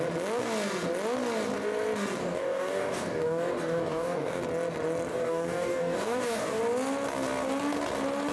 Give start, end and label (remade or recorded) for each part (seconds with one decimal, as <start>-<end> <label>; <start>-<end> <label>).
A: 0.0-2.2 recorded; 2.2-4.4 remade; 4.4-5.1 recorded; 5.1-6.6 remade; 6.6-8.3 recorded